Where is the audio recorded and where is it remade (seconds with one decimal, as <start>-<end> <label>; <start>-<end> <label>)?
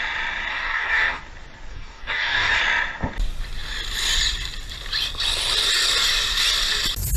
0.0-0.5 recorded; 0.5-1.2 remade; 1.2-1.7 recorded; 1.7-2.6 remade; 2.6-7.2 recorded